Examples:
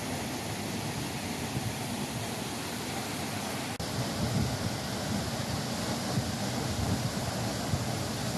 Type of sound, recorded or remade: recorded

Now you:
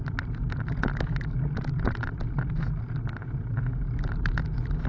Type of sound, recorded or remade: recorded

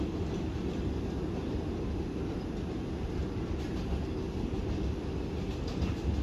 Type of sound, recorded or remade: recorded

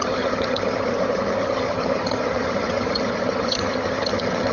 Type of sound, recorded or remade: remade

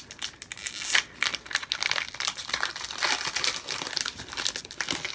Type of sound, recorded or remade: recorded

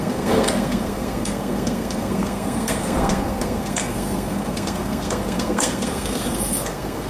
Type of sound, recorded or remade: remade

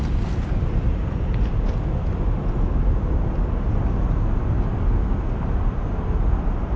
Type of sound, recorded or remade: recorded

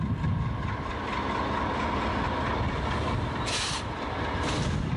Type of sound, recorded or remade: recorded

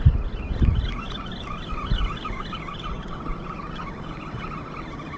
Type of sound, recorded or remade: recorded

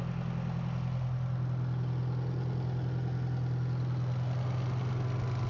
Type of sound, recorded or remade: recorded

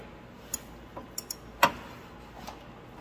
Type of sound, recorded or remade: recorded